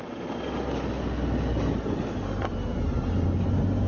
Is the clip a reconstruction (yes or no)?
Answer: no